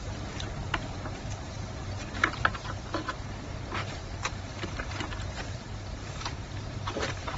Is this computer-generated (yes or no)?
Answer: yes